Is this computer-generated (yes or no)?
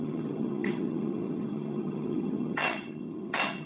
yes